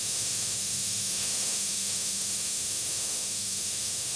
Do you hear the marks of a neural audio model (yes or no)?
yes